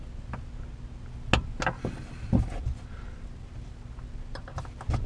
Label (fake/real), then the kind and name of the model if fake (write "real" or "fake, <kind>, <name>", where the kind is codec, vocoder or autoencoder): real